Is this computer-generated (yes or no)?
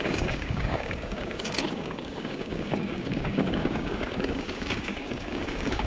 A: yes